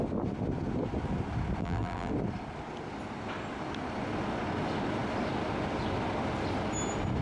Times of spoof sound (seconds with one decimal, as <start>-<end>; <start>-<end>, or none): 1.6-2.1